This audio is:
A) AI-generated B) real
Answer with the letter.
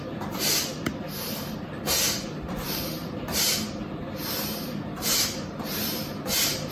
A